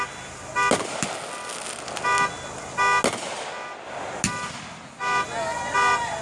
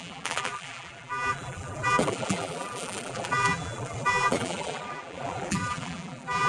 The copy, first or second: second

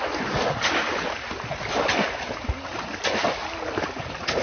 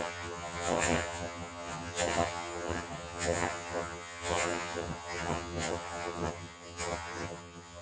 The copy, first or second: second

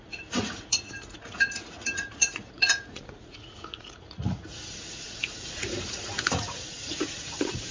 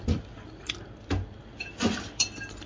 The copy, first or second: first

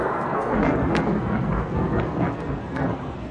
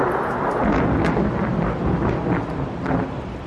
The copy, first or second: first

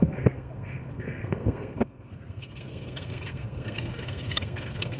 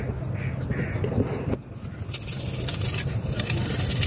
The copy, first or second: first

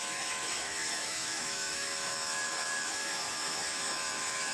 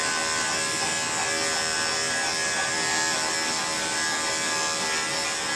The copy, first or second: first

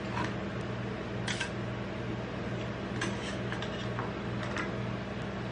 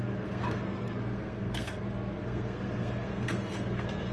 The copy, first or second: second